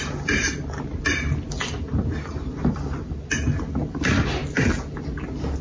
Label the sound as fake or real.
real